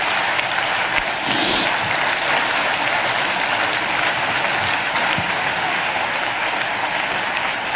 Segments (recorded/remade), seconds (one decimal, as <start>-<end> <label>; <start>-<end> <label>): 0.0-5.4 recorded; 5.4-6.1 remade; 6.1-7.8 recorded